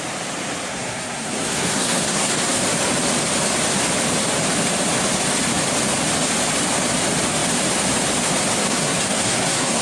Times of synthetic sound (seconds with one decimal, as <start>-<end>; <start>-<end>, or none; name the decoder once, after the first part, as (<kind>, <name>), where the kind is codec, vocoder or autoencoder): 0.7-2.6 (codec, SNAC); 8.6-9.8